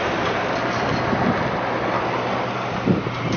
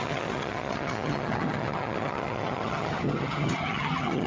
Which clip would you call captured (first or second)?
first